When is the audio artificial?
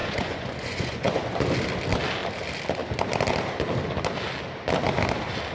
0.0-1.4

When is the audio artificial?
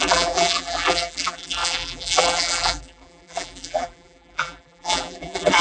0.0-5.6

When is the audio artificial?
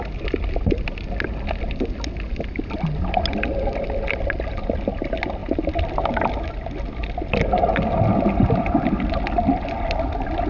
none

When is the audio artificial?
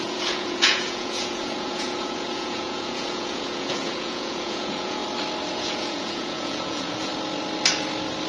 0.0-5.0; 5.5-7.1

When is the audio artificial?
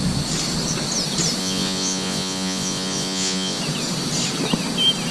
1.4-3.6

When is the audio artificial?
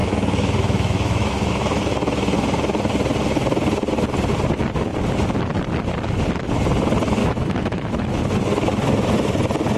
0.0-1.5; 7.2-8.2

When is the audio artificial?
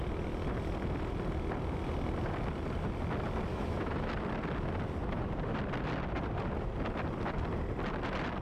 3.5-4.1